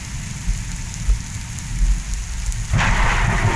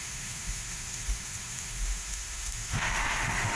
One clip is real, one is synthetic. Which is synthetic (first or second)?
second